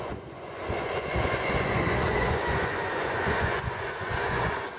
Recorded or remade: remade